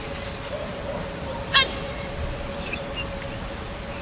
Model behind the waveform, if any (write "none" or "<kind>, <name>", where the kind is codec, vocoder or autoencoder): vocoder, BigVGAN v2